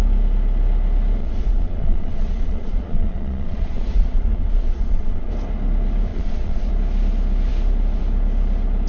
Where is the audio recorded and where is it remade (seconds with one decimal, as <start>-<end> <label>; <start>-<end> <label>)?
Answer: 0.0-1.2 recorded; 1.2-5.3 remade; 5.3-6.1 recorded; 6.1-6.7 remade; 6.7-8.9 recorded